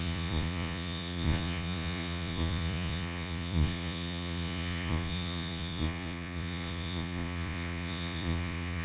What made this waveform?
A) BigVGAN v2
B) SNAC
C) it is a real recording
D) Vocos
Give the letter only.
D